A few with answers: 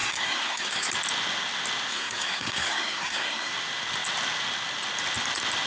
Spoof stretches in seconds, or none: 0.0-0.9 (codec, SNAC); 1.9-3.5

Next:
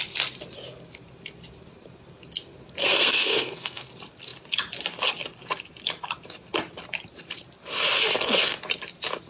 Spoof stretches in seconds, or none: 2.8-3.9 (codec, SNAC)

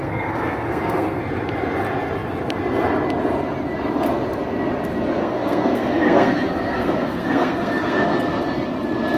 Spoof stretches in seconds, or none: 0.0-1.2 (codec, SNAC); 5.2-8.3

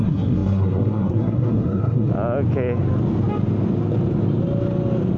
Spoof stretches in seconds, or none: 0.0-2.1 (codec, SNAC)

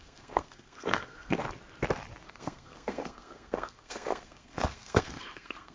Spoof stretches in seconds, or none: 0.0-1.4 (codec, SNAC); 2.3-5.7

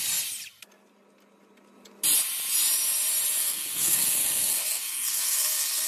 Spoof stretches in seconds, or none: 3.4-5.9 (codec, SNAC)

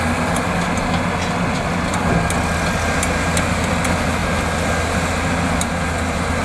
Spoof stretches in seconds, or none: none

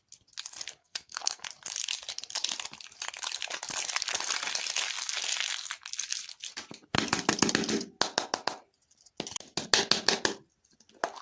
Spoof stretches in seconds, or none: 0.8-1.4 (codec, SNAC)